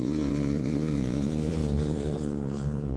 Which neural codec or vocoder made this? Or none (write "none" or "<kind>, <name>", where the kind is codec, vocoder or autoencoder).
vocoder, Vocos